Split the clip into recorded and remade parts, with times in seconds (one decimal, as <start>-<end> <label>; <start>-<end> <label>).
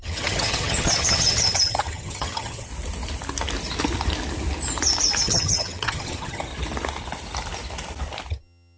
0.0-2.7 remade; 2.7-5.2 recorded; 5.2-6.5 remade; 6.5-8.3 recorded; 8.3-8.8 remade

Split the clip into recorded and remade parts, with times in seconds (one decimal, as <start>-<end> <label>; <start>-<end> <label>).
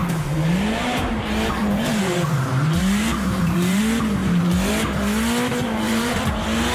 0.0-1.1 remade; 1.1-1.6 recorded; 1.6-3.8 remade; 3.8-4.2 recorded; 4.2-4.7 remade; 4.7-5.6 recorded; 5.6-6.2 remade; 6.2-6.7 recorded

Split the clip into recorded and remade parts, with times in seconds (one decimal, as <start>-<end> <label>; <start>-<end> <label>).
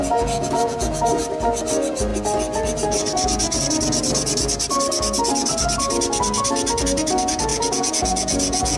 0.0-1.2 remade; 1.2-7.5 recorded; 7.5-8.8 remade